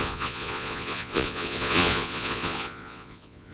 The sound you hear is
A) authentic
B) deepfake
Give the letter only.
B